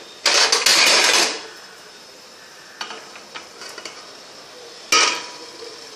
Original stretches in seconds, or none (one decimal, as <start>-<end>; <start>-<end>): 0.0-0.7; 2.7-6.0

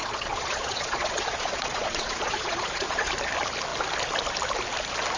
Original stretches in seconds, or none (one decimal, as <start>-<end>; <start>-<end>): 3.1-5.2

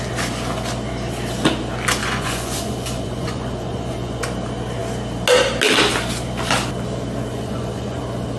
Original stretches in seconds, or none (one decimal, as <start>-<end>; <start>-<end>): 0.0-2.0; 4.2-7.3; 8.0-8.4

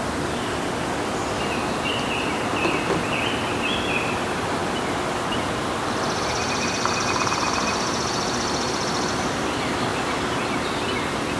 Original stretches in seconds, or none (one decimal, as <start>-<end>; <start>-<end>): 0.0-11.4

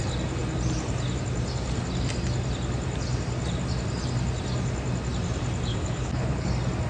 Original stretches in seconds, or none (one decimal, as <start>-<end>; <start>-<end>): 0.0-5.7; 6.5-6.9

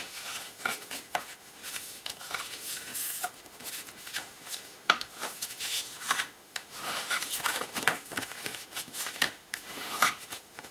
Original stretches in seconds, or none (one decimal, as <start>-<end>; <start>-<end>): none